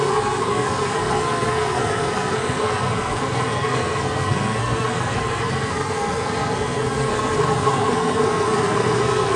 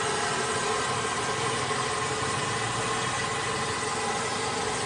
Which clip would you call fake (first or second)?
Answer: first